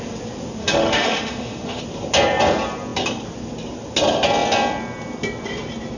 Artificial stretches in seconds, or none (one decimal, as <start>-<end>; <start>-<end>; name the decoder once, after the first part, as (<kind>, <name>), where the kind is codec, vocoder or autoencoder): 0.6-1.8 (autoencoder, DAC-VAE)